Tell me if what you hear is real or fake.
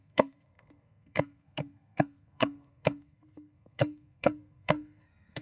fake